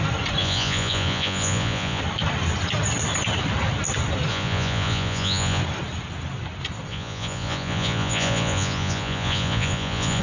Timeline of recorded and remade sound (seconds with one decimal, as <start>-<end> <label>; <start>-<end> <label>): 0.0-0.4 recorded; 0.4-2.0 remade; 2.0-4.3 recorded; 4.3-5.6 remade; 5.6-6.9 recorded; 6.9-10.2 remade